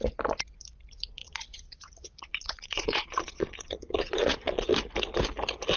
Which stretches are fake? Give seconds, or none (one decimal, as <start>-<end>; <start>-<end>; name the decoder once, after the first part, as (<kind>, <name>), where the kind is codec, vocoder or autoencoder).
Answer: 1.2-4.7 (vocoder, Vocos)